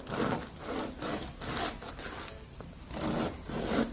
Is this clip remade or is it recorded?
recorded